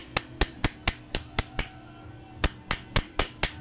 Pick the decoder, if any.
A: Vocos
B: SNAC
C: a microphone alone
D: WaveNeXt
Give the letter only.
C